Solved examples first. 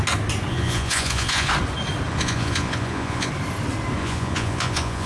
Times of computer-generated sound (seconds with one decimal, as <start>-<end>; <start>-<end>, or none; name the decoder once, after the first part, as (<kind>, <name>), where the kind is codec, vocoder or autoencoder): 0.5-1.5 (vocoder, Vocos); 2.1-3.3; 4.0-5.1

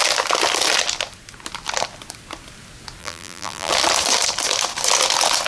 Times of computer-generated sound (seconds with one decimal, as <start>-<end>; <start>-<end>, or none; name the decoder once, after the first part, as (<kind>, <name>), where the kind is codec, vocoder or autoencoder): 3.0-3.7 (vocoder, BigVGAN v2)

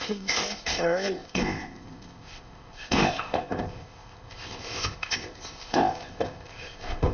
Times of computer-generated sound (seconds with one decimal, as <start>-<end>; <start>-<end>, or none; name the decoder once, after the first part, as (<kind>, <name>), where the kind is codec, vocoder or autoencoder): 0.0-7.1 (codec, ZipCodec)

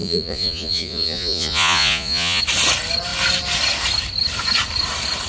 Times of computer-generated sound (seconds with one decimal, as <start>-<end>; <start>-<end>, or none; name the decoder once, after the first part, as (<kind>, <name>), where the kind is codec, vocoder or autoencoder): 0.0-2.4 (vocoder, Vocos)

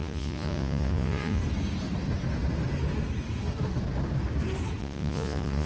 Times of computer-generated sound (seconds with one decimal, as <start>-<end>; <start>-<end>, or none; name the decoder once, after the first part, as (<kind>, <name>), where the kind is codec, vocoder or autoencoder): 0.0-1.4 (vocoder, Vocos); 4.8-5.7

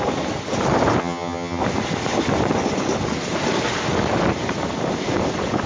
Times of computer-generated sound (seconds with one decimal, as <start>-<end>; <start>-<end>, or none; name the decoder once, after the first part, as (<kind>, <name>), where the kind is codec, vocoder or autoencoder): 1.0-1.6 (vocoder, HiFi-GAN)